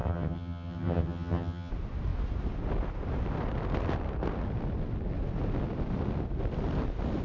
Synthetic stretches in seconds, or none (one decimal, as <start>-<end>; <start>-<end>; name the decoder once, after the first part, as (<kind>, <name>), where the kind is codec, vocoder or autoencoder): 0.0-1.7 (vocoder, HiFi-GAN)